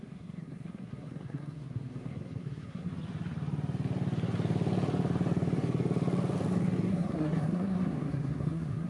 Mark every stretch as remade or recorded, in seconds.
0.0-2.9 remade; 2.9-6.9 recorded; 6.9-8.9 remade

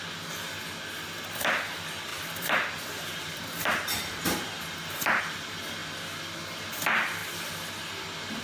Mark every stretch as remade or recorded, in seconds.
0.0-2.1 recorded; 2.1-5.2 remade; 5.2-8.4 recorded

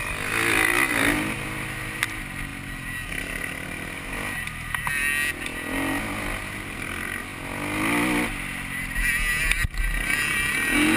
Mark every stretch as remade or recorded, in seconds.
0.0-11.0 recorded

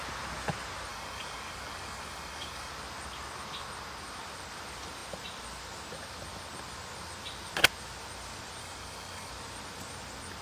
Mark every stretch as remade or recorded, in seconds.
0.0-0.9 recorded; 0.9-2.7 remade; 2.7-8.6 recorded; 8.6-9.3 remade; 9.3-10.4 recorded

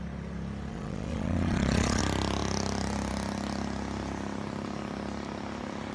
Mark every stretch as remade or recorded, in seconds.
0.0-0.7 recorded; 0.7-2.0 remade; 2.0-5.9 recorded

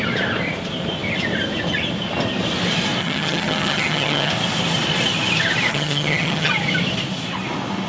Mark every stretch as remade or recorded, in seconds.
0.0-3.0 recorded; 3.0-4.3 remade; 4.3-5.7 recorded; 5.7-6.5 remade; 6.5-7.9 recorded